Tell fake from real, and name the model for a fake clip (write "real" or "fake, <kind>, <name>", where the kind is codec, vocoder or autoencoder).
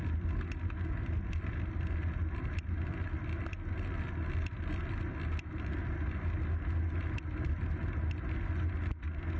real